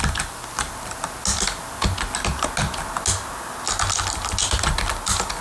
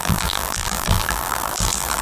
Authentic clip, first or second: first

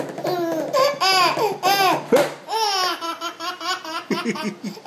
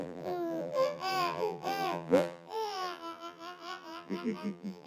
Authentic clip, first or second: first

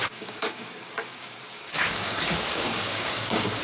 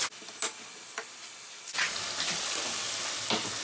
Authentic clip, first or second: second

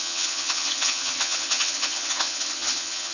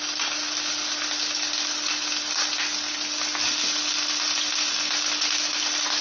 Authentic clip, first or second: second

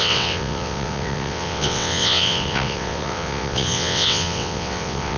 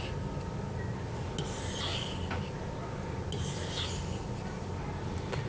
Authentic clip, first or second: second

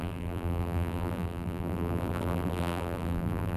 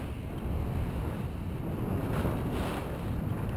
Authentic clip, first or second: second